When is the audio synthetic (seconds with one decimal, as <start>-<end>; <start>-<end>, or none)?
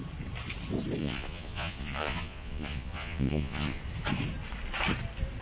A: 1.0-3.8